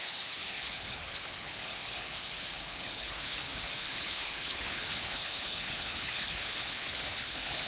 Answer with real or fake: fake